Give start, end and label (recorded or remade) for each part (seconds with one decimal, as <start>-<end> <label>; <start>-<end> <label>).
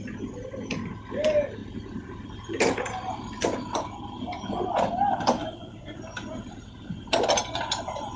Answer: 0.0-5.4 recorded; 5.4-6.0 remade; 6.0-8.2 recorded